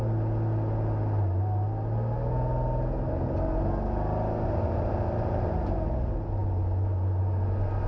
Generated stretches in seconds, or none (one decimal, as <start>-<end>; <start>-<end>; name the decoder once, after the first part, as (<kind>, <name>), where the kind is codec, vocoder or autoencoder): none